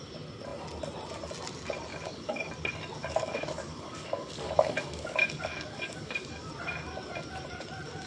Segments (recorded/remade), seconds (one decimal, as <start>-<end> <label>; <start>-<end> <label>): 0.0-1.9 recorded; 1.9-2.5 remade; 2.5-3.0 recorded; 3.0-6.5 remade; 6.5-8.1 recorded